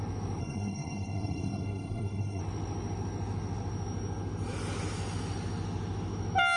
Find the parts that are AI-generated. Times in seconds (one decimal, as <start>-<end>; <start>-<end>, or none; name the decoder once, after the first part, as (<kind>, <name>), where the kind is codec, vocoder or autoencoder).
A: 0.4-2.4 (codec, SNAC)